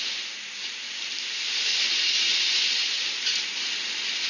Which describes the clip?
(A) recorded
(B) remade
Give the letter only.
A